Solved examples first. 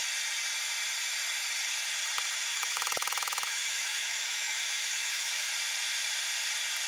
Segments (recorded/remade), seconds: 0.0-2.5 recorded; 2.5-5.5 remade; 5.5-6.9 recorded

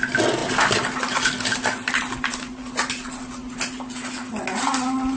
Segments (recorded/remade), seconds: 0.0-5.2 recorded

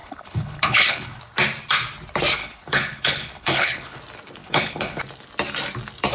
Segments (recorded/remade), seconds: 0.0-1.2 remade; 1.2-2.4 recorded; 2.4-4.0 remade; 4.0-4.4 recorded; 4.4-5.0 remade; 5.0-6.1 recorded

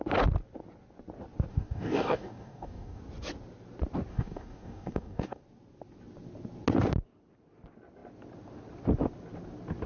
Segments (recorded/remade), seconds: 0.0-1.5 recorded; 1.5-3.0 remade; 3.0-4.1 recorded; 4.1-5.4 remade; 5.4-9.9 recorded

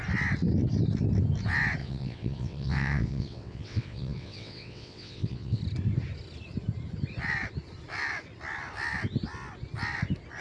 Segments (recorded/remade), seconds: 0.0-1.8 recorded; 1.8-5.6 remade; 5.6-10.4 recorded

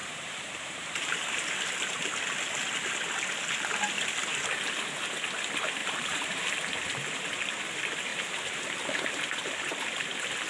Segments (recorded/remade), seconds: 0.0-2.2 remade; 2.2-5.8 recorded; 5.8-6.5 remade; 6.5-8.1 recorded; 8.1-9.0 remade; 9.0-10.5 recorded